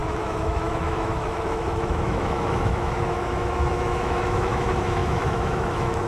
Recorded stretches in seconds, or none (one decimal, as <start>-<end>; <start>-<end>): none